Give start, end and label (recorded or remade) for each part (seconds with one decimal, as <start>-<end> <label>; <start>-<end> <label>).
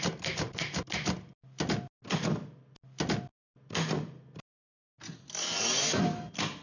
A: 0.0-6.6 recorded